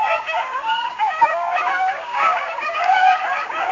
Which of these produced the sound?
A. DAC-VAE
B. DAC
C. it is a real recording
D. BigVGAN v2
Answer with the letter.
B